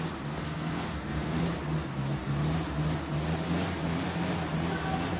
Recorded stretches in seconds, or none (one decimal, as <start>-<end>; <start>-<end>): 0.0-0.4; 1.4-5.2